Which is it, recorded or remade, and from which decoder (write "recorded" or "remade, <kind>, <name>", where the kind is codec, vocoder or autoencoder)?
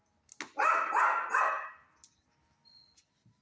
recorded